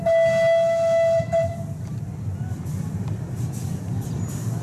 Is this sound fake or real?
real